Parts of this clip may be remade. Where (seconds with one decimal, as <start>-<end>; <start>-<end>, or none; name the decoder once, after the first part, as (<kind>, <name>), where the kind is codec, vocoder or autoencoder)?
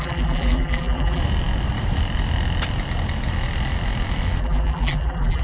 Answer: 0.0-1.2 (vocoder, BigVGAN v2); 4.4-5.4